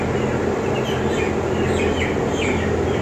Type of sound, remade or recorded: recorded